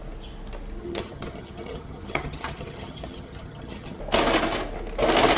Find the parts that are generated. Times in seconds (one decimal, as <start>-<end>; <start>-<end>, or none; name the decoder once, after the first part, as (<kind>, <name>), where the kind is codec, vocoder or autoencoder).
0.8-4.0 (vocoder, HiFi-GAN)